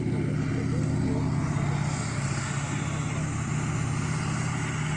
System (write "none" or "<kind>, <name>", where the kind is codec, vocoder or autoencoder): none